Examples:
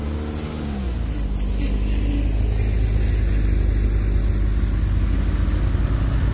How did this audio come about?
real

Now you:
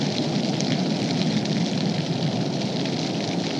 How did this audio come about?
real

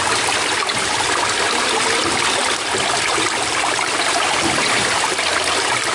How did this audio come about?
real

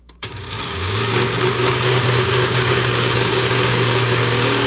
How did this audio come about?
fake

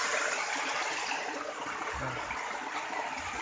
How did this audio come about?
real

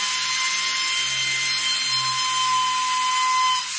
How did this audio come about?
real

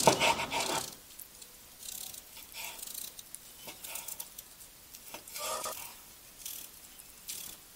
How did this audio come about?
real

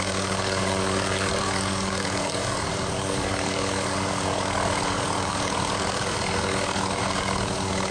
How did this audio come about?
fake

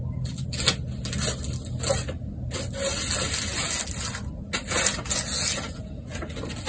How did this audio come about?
real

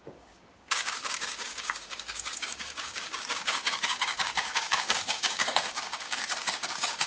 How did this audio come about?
fake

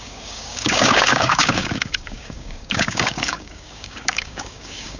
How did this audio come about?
fake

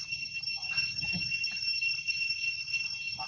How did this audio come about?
real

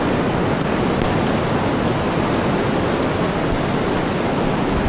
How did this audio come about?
real